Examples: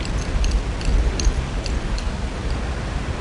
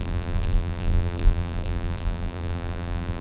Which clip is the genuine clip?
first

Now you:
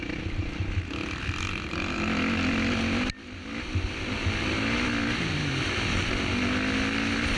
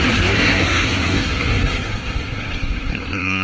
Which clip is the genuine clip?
first